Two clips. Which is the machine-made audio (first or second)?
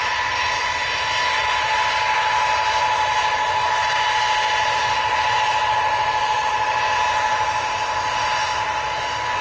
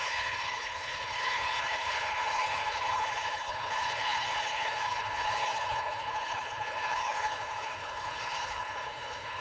second